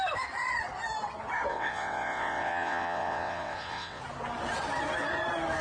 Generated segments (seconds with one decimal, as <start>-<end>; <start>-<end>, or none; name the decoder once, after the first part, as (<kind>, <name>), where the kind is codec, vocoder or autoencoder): 1.5-4.0 (vocoder, WaveNeXt)